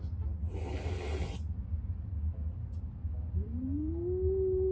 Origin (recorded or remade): recorded